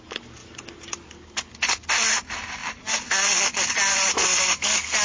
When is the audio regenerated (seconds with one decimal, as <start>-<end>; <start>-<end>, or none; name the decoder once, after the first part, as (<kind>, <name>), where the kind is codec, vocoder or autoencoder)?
0.4-1.1 (vocoder, BigVGAN v2)